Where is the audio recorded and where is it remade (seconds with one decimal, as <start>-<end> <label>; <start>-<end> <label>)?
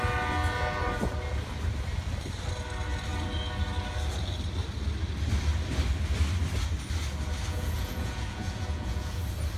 0.0-7.5 recorded; 7.5-9.2 remade; 9.2-9.6 recorded